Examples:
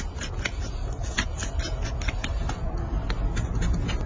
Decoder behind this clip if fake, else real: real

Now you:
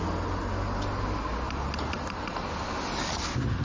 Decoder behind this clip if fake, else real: real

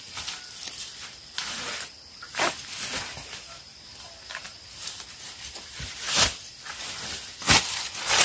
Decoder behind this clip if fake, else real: real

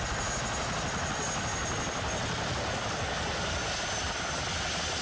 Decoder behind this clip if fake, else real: real